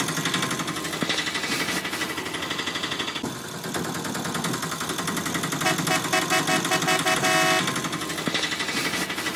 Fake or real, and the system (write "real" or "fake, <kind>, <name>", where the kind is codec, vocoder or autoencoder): real